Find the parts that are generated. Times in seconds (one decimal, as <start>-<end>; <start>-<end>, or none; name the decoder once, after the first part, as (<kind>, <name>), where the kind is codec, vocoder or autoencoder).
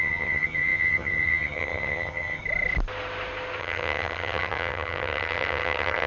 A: 0.0-2.4 (vocoder, HiFi-GAN); 3.6-6.1